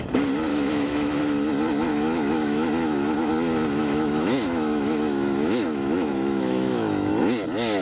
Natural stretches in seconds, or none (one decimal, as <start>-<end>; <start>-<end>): 0.0-0.5; 1.2-1.9; 3.3-3.8; 7.1-7.8